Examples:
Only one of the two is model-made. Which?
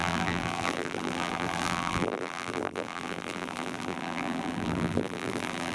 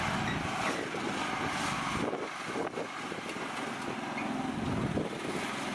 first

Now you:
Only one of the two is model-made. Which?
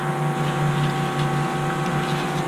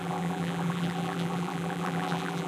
second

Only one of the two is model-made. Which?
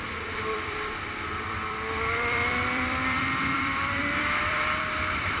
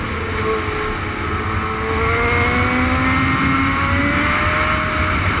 first